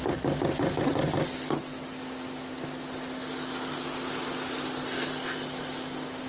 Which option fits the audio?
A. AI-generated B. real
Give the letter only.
B